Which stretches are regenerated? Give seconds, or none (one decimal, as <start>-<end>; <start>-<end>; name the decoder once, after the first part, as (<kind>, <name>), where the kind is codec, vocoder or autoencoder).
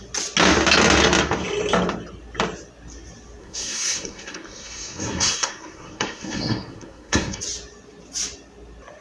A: 3.4-7.4 (codec, SNAC)